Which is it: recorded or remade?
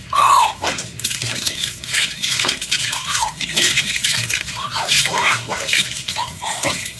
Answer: remade